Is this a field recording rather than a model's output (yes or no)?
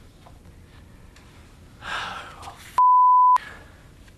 yes